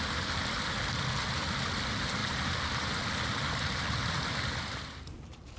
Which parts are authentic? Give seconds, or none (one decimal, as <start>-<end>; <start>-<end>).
0.0-5.6